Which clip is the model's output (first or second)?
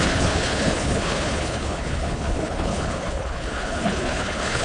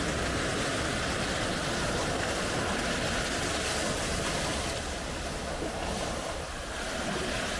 first